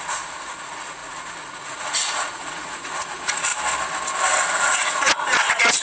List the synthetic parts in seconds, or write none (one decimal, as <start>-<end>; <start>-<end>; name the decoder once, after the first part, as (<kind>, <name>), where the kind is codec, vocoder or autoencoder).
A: 0.0-3.5 (vocoder, Vocos); 4.5-5.8